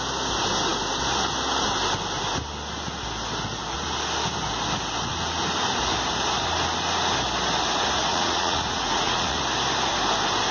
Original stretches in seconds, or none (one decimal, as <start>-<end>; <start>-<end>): 0.0-8.1; 9.4-10.5